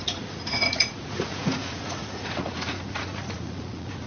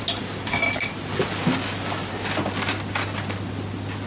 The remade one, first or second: first